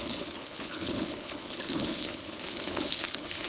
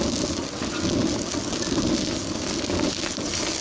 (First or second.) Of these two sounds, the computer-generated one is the first